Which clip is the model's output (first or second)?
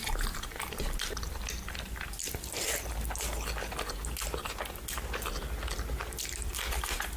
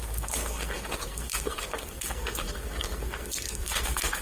second